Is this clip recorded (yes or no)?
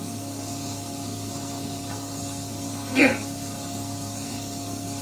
no